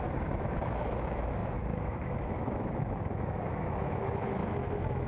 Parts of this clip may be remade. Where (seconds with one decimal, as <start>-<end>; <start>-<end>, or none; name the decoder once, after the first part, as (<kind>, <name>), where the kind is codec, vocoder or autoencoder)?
0.0-5.1 (autoencoder, DAC-VAE)